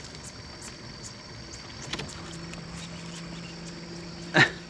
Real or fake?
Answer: real